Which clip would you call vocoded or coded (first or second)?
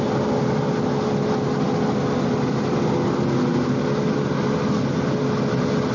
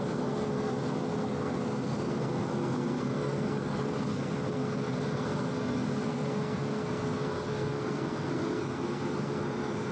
second